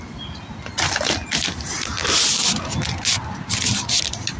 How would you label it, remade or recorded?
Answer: recorded